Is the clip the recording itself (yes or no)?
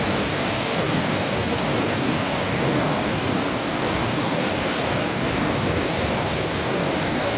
no